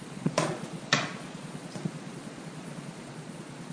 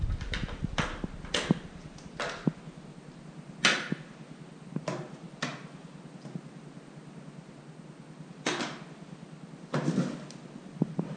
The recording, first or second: second